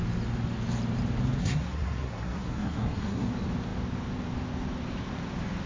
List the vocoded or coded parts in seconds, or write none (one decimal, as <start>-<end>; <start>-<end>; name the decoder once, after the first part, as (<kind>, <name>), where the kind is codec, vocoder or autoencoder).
1.4-3.3 (codec, SNAC)

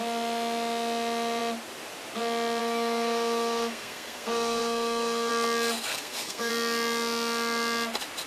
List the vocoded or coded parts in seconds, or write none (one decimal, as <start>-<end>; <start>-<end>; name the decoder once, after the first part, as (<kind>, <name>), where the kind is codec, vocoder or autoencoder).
2.6-5.3 (codec, SNAC); 5.9-6.5

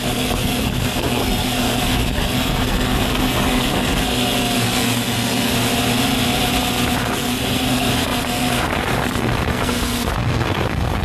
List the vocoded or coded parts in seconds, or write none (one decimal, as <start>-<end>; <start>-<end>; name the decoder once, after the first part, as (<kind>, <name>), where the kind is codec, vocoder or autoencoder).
0.0-5.5 (codec, SNAC); 7.0-11.0

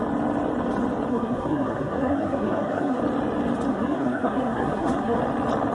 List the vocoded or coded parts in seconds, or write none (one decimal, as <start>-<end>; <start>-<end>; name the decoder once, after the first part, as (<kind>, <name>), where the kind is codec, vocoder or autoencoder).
1.1-3.0 (codec, SNAC); 3.7-5.2

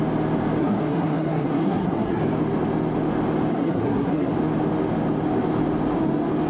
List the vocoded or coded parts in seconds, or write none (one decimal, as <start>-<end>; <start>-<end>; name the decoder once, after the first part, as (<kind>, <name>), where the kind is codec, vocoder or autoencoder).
0.6-2.2 (codec, SNAC); 3.5-4.3

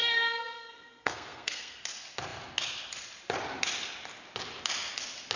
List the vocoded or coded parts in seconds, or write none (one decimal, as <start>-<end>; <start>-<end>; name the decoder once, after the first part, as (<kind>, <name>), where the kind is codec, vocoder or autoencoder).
0.0-1.8 (codec, SNAC)

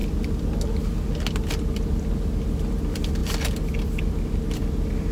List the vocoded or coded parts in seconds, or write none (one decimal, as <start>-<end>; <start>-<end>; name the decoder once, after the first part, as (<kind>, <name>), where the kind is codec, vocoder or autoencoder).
none

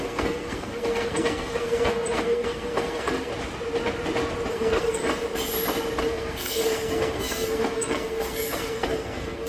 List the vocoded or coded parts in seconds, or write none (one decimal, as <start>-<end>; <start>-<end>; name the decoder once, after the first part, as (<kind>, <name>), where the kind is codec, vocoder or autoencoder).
0.0-3.3 (codec, SNAC); 4.5-5.0; 6.0-9.5